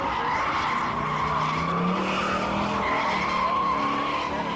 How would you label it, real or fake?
real